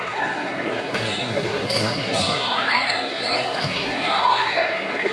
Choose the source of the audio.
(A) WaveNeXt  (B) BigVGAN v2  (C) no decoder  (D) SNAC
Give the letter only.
D